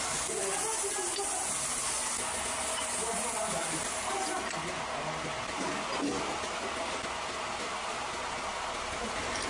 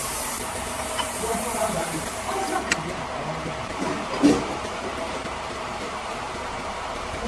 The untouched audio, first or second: first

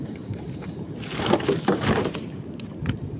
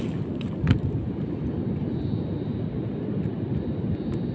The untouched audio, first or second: second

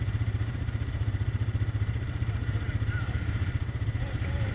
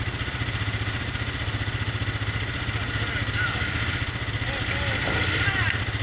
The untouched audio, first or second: second